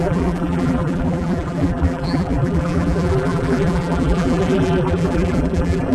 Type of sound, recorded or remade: remade